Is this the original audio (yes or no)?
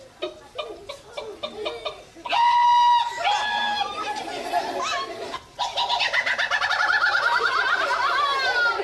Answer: yes